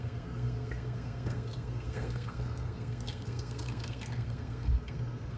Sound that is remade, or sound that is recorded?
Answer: remade